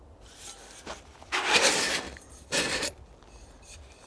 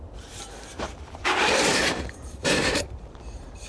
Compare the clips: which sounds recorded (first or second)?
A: first